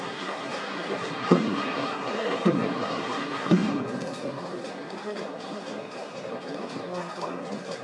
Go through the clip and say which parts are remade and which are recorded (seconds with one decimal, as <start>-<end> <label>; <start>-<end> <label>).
0.0-7.8 remade